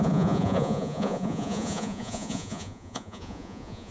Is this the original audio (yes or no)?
no